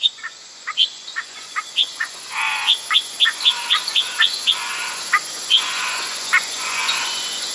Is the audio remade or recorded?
remade